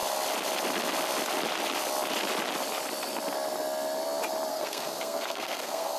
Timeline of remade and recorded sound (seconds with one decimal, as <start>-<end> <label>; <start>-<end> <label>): 0.0-4.5 recorded; 4.5-6.0 remade